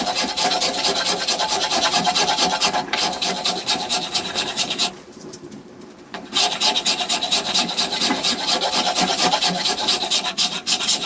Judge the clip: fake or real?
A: fake